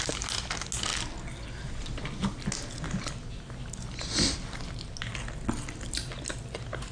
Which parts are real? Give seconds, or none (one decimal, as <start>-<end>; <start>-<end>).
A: 0.0-6.9